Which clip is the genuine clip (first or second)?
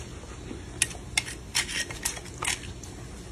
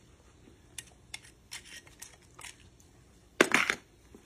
first